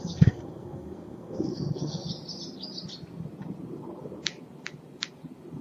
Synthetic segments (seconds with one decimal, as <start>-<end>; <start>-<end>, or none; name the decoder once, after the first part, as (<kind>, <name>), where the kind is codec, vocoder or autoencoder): 0.0-2.0 (codec, SNAC)